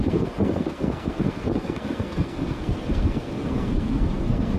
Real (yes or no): no